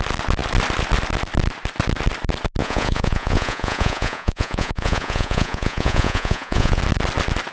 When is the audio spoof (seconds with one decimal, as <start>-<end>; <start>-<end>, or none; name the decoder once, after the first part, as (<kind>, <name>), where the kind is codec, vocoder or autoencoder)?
2.6-6.8 (vocoder, Vocos)